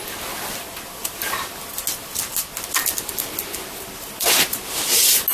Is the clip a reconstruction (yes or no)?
no